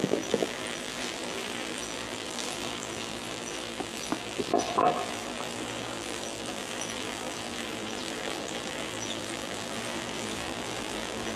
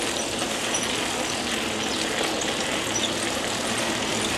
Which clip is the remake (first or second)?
first